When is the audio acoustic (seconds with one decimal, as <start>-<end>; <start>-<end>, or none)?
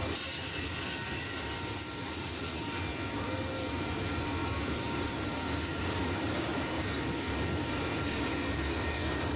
0.0-2.0; 2.6-9.4